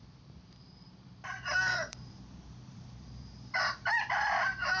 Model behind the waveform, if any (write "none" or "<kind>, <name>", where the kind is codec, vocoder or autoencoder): vocoder, BigVGAN v2